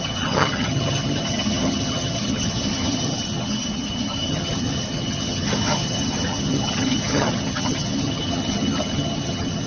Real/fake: fake